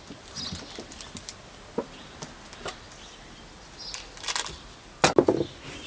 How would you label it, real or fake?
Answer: real